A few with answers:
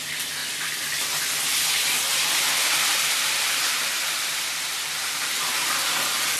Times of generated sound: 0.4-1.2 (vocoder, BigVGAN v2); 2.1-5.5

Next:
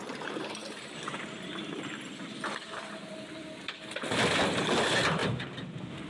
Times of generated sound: 0.6-4.3 (vocoder, BigVGAN v2); 5.2-6.1